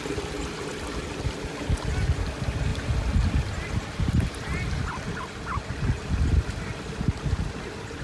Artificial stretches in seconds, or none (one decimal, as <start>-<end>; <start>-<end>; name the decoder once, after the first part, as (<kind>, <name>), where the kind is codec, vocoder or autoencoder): 2.7-5.1 (vocoder, BigVGAN v2)

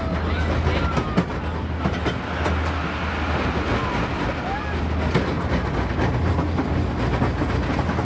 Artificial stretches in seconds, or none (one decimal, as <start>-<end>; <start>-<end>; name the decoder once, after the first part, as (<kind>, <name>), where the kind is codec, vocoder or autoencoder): none